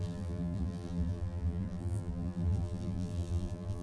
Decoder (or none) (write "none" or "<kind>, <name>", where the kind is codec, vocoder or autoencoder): vocoder, BigVGAN v2